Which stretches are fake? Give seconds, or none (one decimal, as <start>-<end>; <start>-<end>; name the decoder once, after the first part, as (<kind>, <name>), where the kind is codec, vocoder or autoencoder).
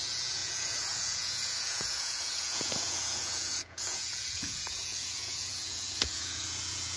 0.0-7.0 (vocoder, Vocos)